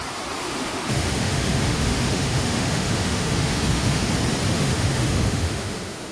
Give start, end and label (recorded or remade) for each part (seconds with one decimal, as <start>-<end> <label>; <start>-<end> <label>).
0.0-0.4 recorded; 0.4-4.1 remade; 4.1-4.5 recorded; 4.5-6.1 remade